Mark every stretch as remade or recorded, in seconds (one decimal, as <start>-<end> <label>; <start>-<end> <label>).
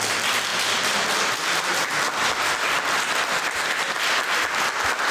0.0-5.1 recorded